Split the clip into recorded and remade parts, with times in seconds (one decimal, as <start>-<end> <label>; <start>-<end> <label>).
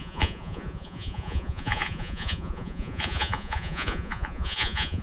0.0-5.0 remade